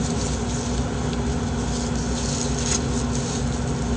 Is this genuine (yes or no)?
yes